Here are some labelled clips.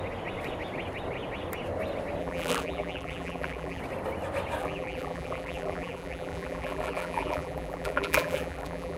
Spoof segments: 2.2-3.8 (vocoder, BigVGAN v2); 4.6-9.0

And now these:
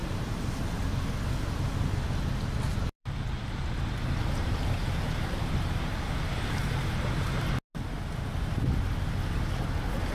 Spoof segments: 0.0-0.8 (vocoder, BigVGAN v2); 2.7-7.5